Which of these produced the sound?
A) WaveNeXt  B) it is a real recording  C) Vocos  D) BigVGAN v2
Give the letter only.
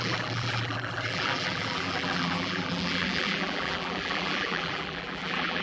D